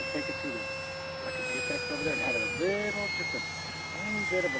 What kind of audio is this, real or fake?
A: real